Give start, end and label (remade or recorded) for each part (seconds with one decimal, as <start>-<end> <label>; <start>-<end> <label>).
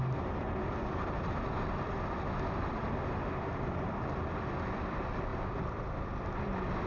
0.0-6.9 recorded